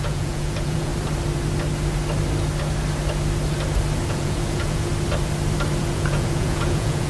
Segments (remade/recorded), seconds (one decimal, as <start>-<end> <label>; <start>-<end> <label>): 0.0-0.9 remade; 0.9-4.1 recorded; 4.1-4.9 remade; 4.9-5.8 recorded; 5.8-7.1 remade